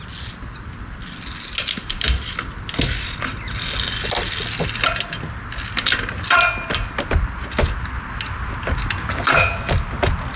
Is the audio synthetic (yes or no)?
no